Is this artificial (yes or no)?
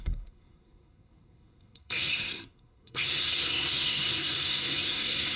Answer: yes